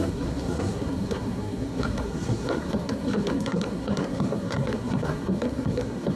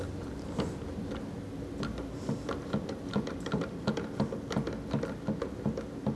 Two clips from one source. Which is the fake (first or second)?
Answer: first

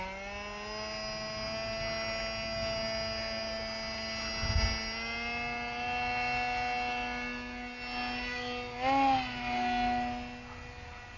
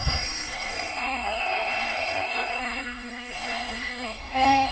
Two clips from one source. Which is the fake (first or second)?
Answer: second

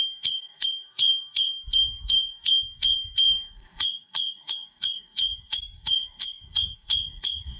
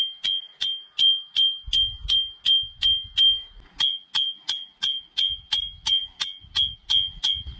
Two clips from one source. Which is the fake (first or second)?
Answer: first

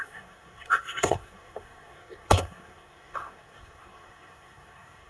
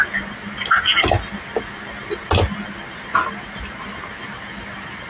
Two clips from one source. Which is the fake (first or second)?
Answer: first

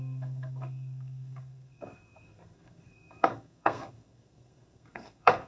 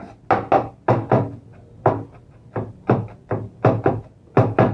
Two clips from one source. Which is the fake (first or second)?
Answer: first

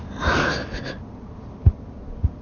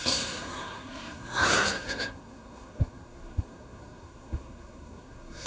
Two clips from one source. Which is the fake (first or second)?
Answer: second